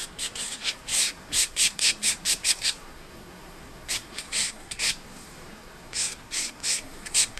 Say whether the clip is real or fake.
fake